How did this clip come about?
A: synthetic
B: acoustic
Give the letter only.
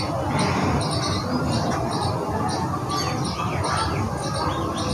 B